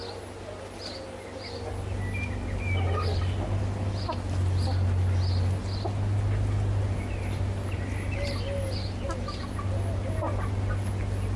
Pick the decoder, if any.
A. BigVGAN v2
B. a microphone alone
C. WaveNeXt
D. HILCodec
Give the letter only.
B